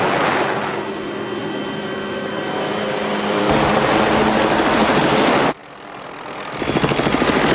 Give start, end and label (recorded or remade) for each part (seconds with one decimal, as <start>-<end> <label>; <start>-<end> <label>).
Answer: 0.0-1.4 recorded; 1.4-3.7 remade; 3.7-7.5 recorded